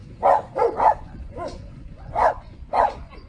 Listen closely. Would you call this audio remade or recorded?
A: remade